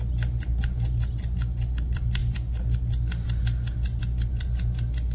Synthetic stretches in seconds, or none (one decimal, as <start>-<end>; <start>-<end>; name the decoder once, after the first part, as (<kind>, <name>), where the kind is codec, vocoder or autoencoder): none

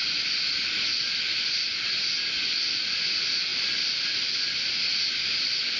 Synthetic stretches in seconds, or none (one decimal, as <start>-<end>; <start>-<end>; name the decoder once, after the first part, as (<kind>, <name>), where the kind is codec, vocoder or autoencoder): 0.0-0.5 (vocoder, BigVGAN v2); 0.9-2.7